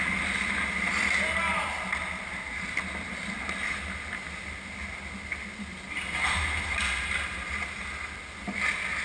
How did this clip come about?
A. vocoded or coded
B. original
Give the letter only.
B